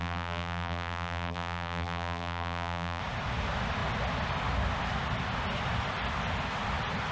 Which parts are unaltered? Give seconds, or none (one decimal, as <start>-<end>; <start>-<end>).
3.0-7.1